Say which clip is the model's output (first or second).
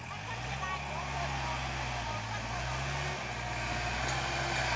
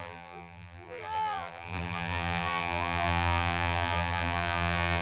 second